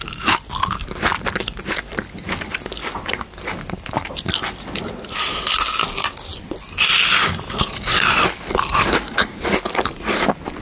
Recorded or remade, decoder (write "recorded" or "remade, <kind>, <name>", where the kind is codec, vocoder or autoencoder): recorded